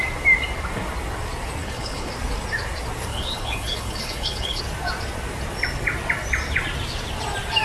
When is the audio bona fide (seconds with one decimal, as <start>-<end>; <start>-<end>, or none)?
0.0-1.6; 2.1-3.1; 4.6-7.6